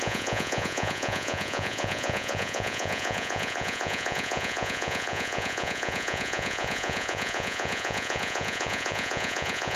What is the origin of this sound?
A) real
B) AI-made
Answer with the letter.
B